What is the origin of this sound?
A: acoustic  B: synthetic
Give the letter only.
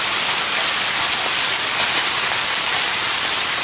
A